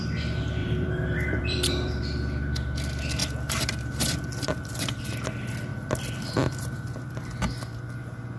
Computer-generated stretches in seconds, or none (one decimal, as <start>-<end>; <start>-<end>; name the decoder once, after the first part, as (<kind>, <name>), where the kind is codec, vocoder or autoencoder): 0.6-2.0 (vocoder, BigVGAN v2); 3.2-5.0; 5.7-7.8